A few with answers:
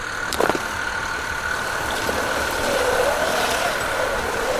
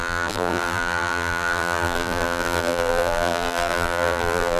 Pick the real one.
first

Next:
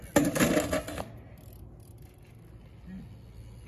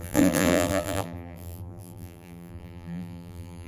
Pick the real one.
first